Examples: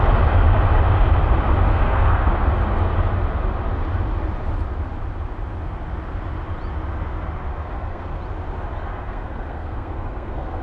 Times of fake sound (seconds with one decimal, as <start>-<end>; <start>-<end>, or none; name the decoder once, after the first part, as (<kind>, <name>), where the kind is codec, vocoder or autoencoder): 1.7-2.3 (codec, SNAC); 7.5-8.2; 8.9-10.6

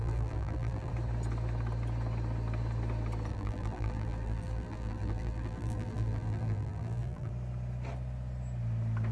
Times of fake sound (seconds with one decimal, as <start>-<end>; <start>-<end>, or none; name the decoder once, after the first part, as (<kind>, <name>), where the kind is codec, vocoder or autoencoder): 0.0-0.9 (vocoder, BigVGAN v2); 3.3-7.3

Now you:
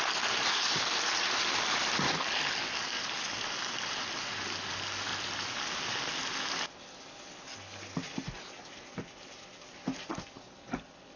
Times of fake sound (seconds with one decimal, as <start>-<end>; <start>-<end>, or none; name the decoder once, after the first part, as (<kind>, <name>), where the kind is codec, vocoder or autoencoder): none

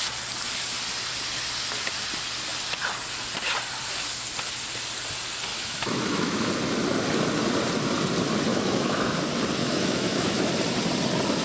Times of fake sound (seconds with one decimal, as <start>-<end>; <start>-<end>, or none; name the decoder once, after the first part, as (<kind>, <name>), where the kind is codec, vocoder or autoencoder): 5.5-6.5 (autoencoder, DAC-VAE); 8.5-9.2; 9.6-10.5

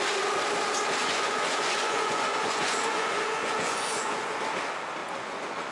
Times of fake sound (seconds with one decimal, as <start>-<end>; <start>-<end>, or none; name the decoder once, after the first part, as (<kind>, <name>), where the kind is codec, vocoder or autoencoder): 1.0-4.4 (vocoder, Vocos); 5.0-5.7

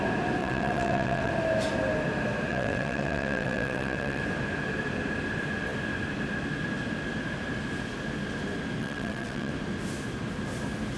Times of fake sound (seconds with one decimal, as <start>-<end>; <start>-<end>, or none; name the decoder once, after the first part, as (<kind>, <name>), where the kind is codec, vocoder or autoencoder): 0.4-1.3 (vocoder, WaveNeXt); 2.5-4.2; 8.8-9.5

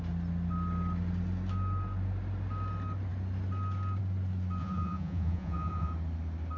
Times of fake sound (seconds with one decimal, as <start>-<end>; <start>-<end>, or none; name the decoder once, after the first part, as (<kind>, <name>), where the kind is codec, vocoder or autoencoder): 4.6-5.9 (vocoder, Vocos)